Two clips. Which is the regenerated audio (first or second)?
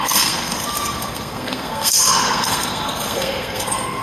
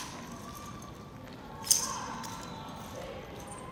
first